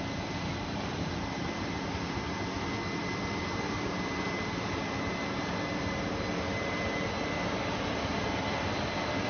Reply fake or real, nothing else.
real